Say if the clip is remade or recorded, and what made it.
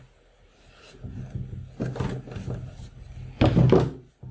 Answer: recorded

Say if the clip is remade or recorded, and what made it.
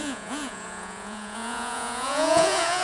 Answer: remade, vocoder, Vocos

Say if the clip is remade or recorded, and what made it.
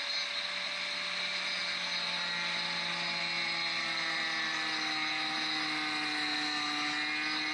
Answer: recorded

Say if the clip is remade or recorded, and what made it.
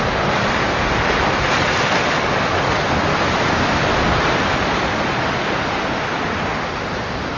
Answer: recorded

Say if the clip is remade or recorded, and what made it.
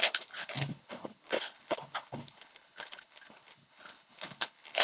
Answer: remade, codec, HILCodec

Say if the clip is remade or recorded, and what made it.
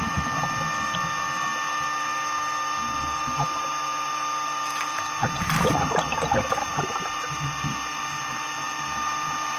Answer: remade, vocoder, BigVGAN v2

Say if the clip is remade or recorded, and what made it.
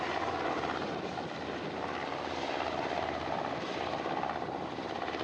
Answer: recorded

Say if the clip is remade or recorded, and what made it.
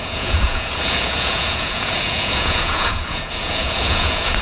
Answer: remade, vocoder, Vocos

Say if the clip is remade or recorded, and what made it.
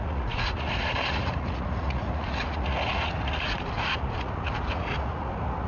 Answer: remade, vocoder, Vocos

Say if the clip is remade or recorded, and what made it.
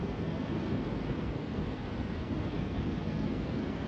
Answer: remade, codec, SNAC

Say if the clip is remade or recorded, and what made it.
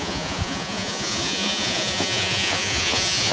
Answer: remade, vocoder, Vocos